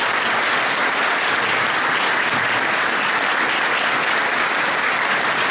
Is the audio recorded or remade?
recorded